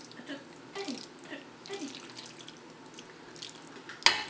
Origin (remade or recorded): recorded